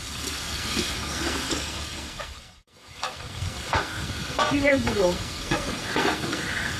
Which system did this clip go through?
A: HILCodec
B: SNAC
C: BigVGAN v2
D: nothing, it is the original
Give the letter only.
B